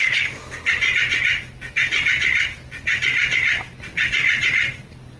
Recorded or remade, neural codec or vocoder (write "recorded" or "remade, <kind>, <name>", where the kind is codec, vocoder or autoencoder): recorded